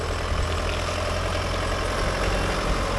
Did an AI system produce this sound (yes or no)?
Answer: no